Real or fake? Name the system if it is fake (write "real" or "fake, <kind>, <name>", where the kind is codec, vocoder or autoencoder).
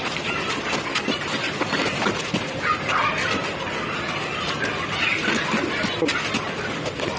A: real